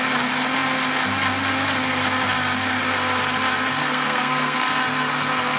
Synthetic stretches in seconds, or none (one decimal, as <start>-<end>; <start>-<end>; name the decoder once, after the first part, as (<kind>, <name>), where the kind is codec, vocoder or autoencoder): 3.8-4.7 (codec, SNAC)